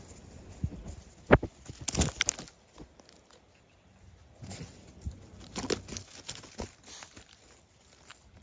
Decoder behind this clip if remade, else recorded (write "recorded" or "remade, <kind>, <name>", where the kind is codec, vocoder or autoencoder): recorded